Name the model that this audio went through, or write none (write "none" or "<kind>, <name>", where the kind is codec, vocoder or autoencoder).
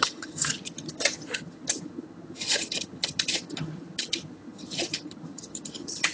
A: vocoder, HiFi-GAN